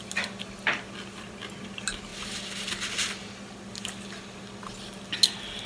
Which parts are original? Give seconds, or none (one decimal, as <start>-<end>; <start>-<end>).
0.0-5.7